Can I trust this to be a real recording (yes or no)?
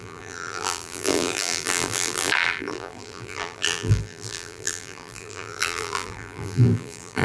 no